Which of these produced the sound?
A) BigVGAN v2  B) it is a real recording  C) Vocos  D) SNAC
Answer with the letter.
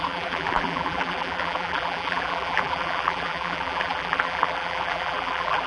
A